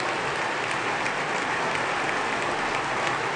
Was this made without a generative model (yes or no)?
yes